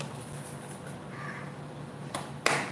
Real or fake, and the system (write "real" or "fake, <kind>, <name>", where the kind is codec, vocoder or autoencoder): real